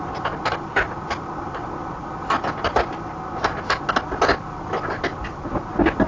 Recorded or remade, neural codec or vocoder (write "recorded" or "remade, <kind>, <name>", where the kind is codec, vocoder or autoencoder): recorded